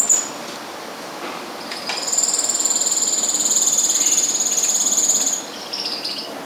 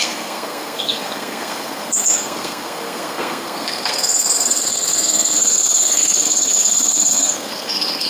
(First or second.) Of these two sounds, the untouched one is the first